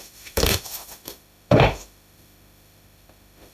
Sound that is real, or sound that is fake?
fake